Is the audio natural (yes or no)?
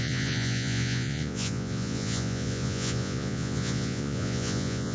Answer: no